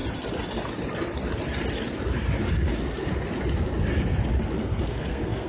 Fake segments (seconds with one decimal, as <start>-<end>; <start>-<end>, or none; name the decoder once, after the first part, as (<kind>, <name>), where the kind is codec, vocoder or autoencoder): 4.6-5.5 (codec, SNAC)